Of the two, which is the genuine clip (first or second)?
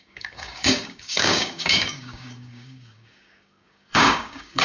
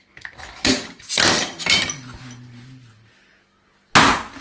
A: second